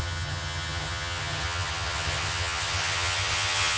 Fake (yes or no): yes